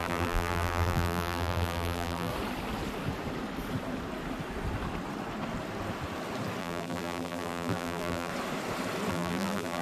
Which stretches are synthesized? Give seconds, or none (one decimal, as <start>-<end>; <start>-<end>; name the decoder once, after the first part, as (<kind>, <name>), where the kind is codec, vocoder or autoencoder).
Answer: 0.0-2.3 (vocoder, BigVGAN v2); 6.6-8.3; 9.1-9.8